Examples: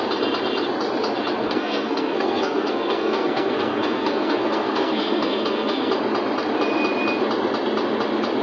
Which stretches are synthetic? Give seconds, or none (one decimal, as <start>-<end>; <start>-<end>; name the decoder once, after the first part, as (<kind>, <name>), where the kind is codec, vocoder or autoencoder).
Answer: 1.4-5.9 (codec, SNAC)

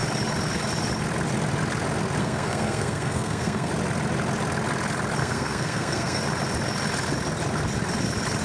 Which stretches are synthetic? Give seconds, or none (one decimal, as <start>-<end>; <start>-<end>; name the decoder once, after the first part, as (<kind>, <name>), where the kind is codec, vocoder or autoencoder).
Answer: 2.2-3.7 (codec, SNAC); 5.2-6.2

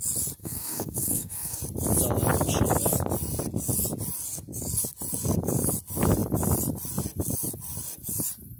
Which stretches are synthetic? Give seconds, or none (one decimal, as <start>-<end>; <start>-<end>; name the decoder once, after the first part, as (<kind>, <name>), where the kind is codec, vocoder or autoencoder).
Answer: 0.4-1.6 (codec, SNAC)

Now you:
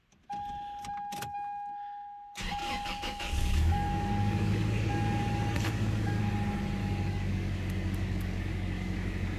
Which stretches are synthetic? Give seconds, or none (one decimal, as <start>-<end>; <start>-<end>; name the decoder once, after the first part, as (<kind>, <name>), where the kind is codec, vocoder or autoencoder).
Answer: 2.6-6.2 (codec, DAC); 6.8-9.4

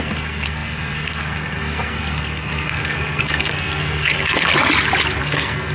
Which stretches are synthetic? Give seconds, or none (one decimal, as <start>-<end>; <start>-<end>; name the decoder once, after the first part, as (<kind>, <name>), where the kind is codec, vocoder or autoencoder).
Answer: 0.0-4.5 (codec, SNAC); 5.2-5.7

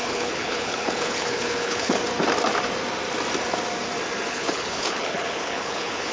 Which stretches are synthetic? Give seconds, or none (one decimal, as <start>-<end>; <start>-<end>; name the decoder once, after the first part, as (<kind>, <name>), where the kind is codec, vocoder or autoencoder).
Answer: 0.0-2.0 (codec, HILCodec); 4.3-6.1